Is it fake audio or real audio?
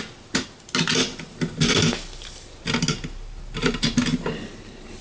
real